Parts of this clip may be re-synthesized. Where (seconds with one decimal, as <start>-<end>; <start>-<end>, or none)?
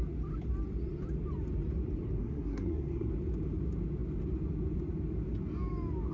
2.2-3.1